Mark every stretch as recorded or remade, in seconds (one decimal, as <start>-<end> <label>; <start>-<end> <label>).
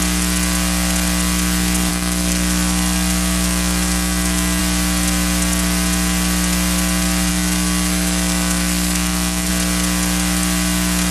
0.0-1.9 recorded; 1.9-4.6 remade; 4.6-7.3 recorded; 7.3-9.5 remade; 9.5-11.1 recorded